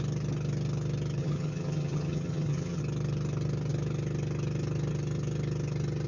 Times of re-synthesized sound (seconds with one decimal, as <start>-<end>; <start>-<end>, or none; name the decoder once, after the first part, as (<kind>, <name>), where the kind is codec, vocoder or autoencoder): 1.2-2.8 (vocoder, HiFi-GAN)